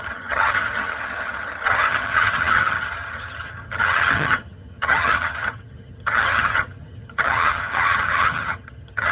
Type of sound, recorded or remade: remade